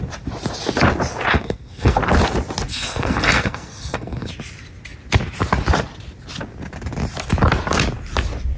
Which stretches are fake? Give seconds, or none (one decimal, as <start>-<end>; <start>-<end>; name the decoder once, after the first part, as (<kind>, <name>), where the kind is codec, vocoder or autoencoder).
1.3-2.0 (codec, SNAC); 2.7-4.3